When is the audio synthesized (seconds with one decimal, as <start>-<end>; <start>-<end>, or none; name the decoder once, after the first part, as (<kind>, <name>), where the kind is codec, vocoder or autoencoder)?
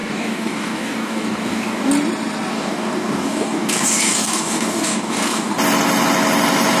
0.0-1.9 (codec, DAC); 2.5-5.5